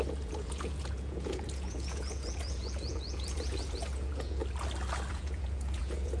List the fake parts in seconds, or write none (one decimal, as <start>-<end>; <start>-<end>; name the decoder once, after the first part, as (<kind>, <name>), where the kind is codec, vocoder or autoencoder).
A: 0.0-4.4 (vocoder, Vocos); 5.1-6.2